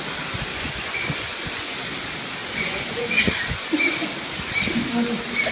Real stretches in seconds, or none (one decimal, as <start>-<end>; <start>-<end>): 0.0-0.5; 1.8-2.4; 4.1-5.5